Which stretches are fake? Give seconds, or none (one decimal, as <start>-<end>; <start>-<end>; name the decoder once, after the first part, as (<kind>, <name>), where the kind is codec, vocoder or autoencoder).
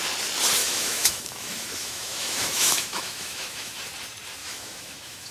0.6-3.8 (autoencoder, DAC-VAE); 4.4-5.3